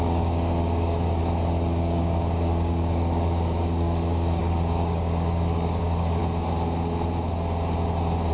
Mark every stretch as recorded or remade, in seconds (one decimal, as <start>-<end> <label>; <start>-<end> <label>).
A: 0.0-1.2 remade; 1.2-1.8 recorded; 1.8-6.2 remade; 6.2-8.3 recorded